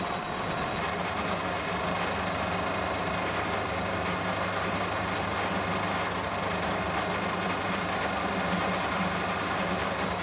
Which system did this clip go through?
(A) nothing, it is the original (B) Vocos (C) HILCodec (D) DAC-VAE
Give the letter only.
A